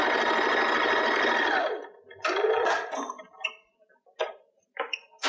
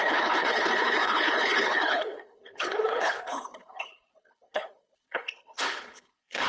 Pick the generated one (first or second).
second